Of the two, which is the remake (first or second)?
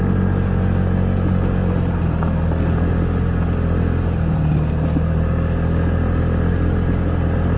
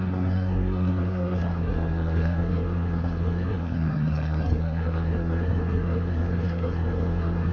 second